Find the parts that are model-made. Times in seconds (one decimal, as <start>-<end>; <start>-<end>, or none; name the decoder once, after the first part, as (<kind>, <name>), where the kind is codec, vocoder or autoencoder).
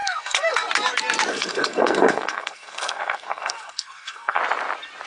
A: 0.0-0.7 (codec, SNAC); 1.3-4.4